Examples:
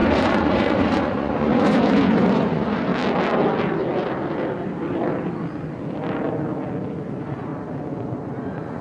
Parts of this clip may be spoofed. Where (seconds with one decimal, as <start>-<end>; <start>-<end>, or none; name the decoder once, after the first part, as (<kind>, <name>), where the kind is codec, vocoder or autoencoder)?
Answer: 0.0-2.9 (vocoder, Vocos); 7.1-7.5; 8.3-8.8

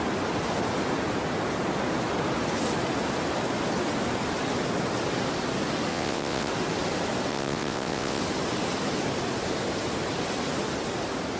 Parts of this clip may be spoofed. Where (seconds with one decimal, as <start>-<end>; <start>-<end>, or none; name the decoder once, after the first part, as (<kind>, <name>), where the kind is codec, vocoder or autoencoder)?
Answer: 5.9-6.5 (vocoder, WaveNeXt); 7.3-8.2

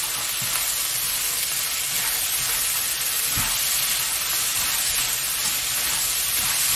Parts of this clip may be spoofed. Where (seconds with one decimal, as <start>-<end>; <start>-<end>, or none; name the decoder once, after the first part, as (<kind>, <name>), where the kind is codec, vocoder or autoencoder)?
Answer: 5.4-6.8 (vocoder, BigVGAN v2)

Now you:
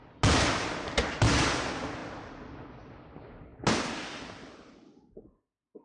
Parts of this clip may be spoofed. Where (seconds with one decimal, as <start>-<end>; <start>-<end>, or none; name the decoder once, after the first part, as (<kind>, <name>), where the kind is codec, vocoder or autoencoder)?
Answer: none